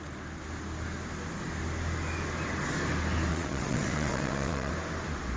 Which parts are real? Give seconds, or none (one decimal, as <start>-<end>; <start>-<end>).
0.0-3.3; 4.7-5.4